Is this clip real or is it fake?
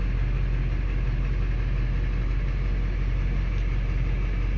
real